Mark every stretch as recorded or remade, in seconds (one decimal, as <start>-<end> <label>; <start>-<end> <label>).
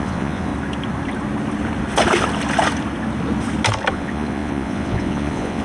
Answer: 0.0-0.5 remade; 0.5-3.9 recorded; 3.9-5.6 remade